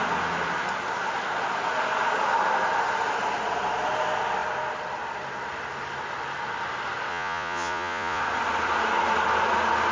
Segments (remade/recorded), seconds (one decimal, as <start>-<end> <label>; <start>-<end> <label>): 0.0-7.1 recorded; 7.1-8.2 remade; 8.2-9.9 recorded